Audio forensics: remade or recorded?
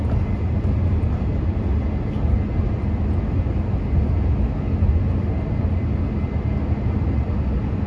recorded